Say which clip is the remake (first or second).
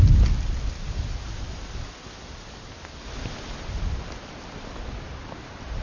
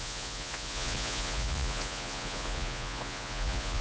second